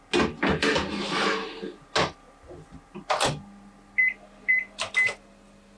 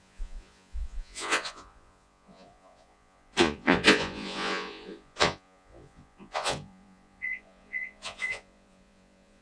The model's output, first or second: second